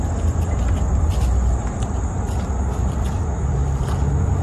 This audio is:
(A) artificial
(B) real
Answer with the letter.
B